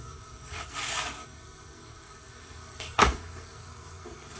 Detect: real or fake fake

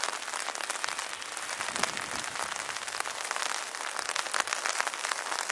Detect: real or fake real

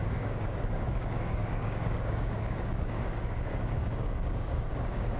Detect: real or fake fake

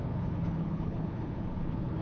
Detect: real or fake fake